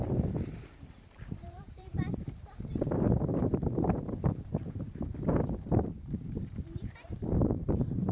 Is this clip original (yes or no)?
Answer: no